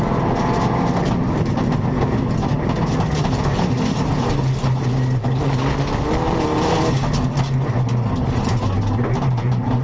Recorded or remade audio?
recorded